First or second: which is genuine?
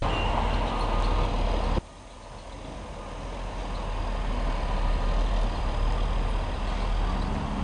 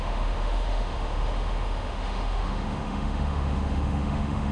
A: first